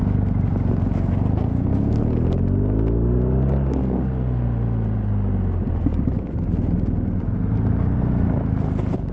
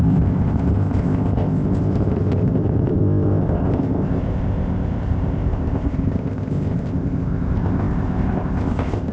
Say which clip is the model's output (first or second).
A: second